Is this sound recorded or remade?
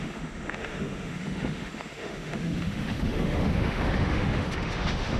remade